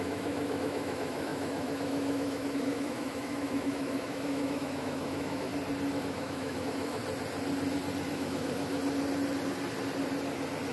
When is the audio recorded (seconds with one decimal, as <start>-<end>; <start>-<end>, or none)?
5.5-6.0; 7.0-8.1; 8.8-10.7